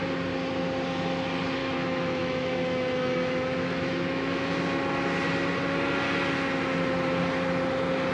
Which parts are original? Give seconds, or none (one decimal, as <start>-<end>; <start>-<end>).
0.0-1.6; 4.5-8.1